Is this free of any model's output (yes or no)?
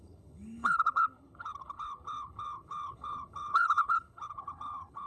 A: no